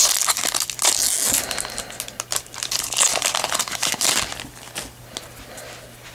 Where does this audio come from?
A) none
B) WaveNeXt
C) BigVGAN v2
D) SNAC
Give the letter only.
A